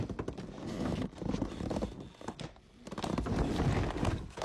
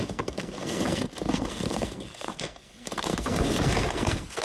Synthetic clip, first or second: second